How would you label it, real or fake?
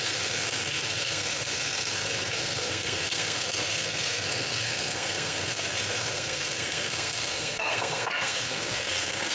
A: fake